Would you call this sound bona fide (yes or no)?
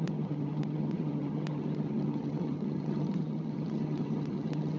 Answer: no